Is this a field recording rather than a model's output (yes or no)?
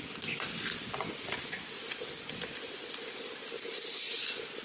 yes